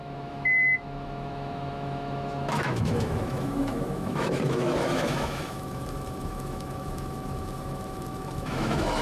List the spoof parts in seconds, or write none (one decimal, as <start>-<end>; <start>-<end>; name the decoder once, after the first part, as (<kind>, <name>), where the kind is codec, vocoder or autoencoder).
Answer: 0.0-9.0 (autoencoder, DAC-VAE)